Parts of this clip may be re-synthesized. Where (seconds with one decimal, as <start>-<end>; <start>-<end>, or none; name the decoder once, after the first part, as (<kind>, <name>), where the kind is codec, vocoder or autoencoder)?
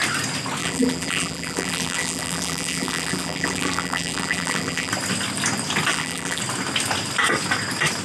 0.6-4.9 (vocoder, BigVGAN v2); 5.9-6.4